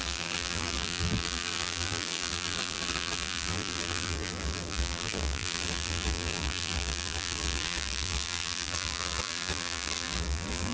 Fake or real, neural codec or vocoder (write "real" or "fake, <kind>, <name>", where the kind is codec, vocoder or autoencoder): fake, vocoder, BigVGAN v2